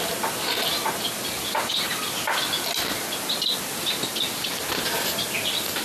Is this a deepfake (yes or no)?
no